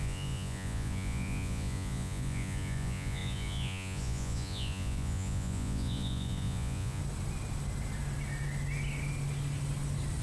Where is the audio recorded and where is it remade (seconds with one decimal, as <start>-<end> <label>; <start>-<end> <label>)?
0.0-7.0 remade; 7.0-10.2 recorded